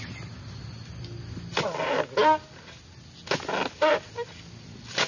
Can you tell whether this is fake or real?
real